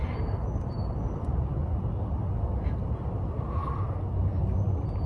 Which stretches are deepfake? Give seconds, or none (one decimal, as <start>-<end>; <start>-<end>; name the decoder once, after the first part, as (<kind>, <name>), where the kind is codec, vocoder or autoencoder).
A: none